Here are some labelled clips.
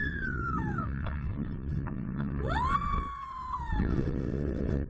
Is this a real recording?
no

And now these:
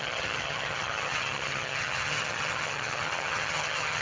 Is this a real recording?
no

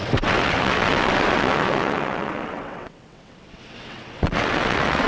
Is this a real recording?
no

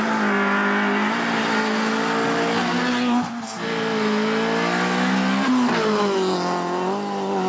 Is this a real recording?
yes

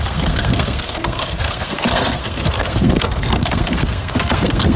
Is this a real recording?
no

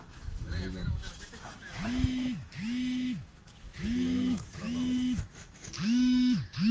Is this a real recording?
no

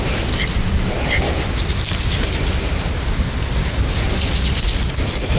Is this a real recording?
yes